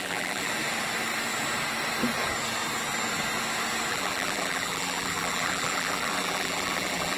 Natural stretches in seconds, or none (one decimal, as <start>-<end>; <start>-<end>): 0.5-3.9